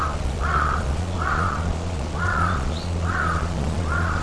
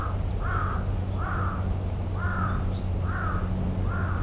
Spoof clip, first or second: first